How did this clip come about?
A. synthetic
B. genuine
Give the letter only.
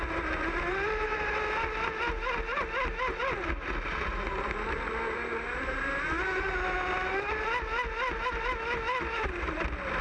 B